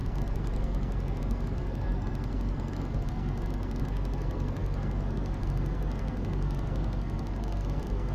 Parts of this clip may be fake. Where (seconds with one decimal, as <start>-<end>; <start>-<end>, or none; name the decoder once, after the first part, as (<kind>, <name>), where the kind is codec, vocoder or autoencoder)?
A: 0.0-8.1 (codec, SNAC)